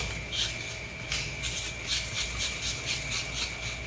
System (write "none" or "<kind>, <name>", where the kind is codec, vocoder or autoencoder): none